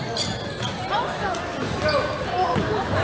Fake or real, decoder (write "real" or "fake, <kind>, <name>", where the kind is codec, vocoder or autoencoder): real